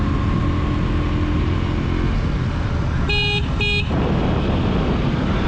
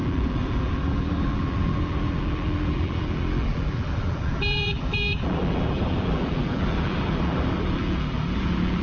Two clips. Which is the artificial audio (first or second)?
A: second